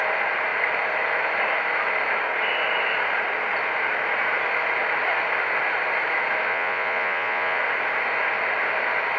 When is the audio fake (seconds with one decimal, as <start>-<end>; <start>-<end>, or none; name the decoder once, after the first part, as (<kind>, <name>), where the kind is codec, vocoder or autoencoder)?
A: 6.5-7.6 (vocoder, Vocos)